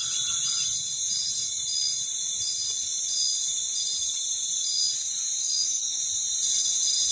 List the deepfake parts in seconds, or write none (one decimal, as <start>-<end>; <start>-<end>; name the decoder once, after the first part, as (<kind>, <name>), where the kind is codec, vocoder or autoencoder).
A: 5.4-6.0 (autoencoder, DAC-VAE)